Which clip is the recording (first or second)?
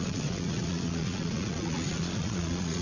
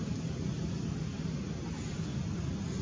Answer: second